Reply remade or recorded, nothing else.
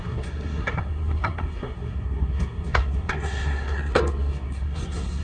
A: remade